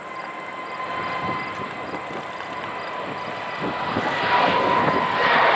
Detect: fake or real real